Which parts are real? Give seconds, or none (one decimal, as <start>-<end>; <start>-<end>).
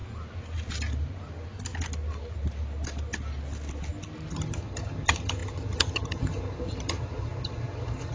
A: 0.0-4.3